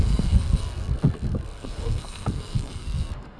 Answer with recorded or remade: remade